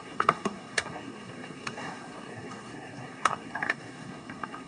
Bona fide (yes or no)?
no